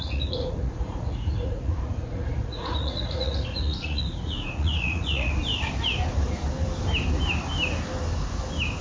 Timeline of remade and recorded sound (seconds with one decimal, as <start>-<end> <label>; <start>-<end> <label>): 0.0-5.3 remade; 5.3-8.8 recorded